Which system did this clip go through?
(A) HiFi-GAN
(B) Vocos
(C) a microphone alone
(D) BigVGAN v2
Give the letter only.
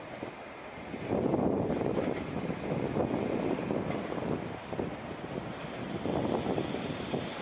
C